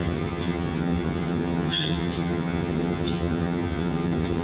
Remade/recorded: remade